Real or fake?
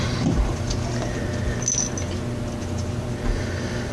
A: real